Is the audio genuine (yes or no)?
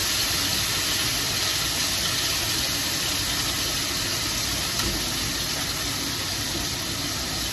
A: yes